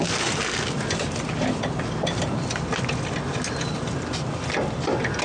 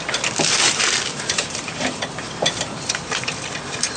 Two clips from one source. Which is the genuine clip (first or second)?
first